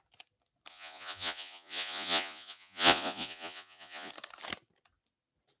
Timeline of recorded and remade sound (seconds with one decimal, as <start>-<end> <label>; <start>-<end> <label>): 0.0-0.7 recorded; 0.7-4.1 remade; 4.1-5.6 recorded